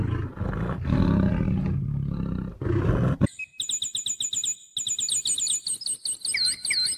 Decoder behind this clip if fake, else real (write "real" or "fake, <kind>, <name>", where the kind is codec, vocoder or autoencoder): real